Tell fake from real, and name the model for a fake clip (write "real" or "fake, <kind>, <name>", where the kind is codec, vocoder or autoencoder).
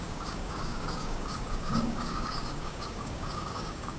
fake, codec, DAC